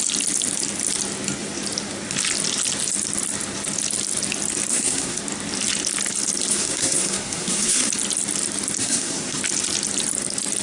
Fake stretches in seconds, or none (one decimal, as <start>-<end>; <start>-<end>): 4.7-5.2; 6.5-7.9; 8.8-9.4